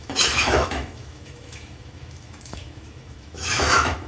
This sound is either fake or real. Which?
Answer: fake